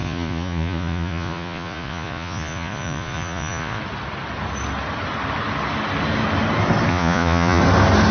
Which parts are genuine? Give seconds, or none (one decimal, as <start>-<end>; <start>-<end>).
3.8-6.9; 7.6-8.1